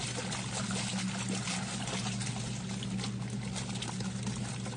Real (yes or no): yes